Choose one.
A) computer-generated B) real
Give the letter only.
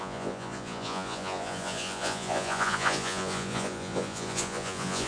A